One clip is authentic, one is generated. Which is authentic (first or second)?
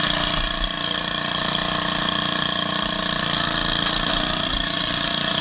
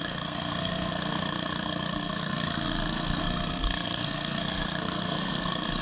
first